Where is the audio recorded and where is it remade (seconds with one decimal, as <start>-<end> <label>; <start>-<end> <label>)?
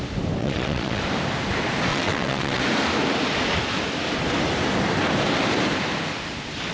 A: 0.0-0.4 recorded; 0.4-1.0 remade; 1.0-1.9 recorded; 1.9-2.6 remade; 2.6-6.7 recorded